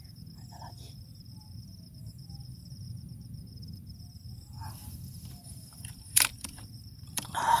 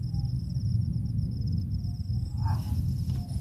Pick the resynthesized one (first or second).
first